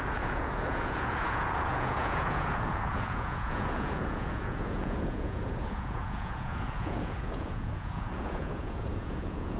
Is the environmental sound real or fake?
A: fake